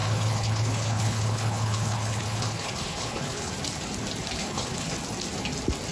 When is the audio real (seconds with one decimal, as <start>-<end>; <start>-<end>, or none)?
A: 3.5-4.4; 5.0-5.9